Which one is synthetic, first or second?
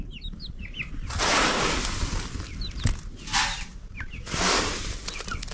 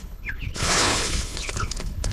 second